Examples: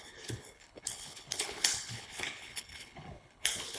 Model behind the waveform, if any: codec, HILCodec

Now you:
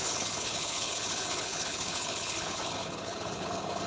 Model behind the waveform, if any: codec, HILCodec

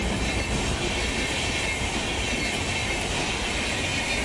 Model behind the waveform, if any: none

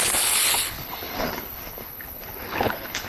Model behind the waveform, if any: codec, HILCodec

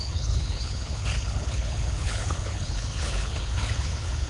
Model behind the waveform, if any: codec, HILCodec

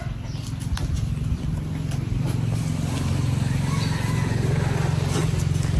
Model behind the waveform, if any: none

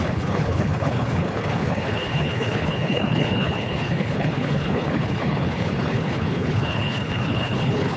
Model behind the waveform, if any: codec, HILCodec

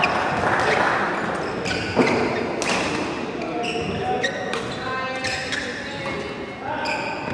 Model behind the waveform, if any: none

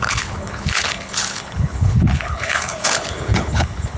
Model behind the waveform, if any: codec, HILCodec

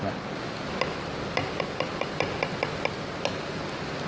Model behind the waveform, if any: none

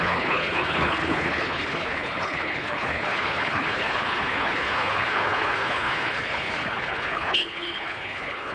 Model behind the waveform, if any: codec, HILCodec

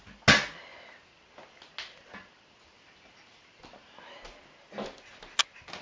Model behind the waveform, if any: none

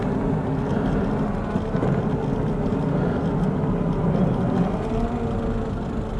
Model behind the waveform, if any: none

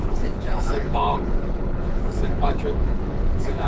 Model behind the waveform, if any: codec, HILCodec